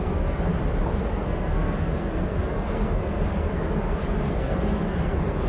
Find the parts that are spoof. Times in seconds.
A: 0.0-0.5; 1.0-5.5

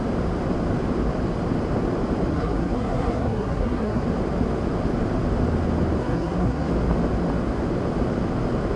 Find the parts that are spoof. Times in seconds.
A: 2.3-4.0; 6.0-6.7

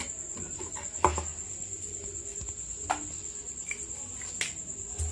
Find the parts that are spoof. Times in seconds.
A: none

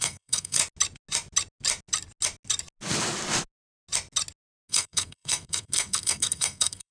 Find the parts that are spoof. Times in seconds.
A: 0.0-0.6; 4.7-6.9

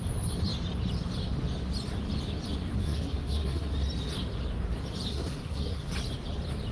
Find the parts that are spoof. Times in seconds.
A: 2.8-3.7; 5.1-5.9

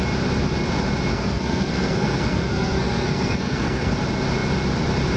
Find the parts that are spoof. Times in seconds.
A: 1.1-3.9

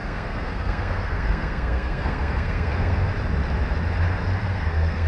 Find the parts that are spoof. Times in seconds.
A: 0.0-3.1; 4.4-5.1